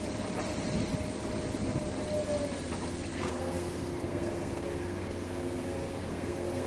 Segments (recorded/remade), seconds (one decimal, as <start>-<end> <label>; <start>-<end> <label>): 0.0-3.1 recorded; 3.1-6.7 remade